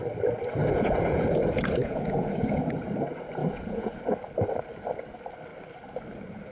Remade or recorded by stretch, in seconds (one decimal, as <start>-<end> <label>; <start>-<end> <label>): 0.0-0.6 recorded; 0.6-2.6 remade; 2.6-3.4 recorded; 3.4-4.0 remade; 4.0-6.5 recorded